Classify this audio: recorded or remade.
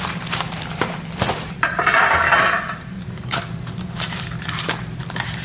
remade